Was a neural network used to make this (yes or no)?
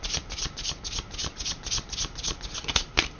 no